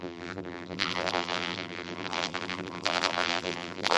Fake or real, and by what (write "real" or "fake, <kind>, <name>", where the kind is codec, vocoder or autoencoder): fake, vocoder, BigVGAN v2